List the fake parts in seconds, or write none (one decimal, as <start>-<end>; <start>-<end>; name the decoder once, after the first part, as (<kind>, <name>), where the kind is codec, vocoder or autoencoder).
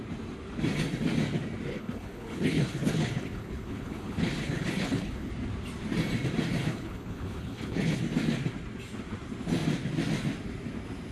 1.7-5.3 (codec, HILCodec); 6.6-8.0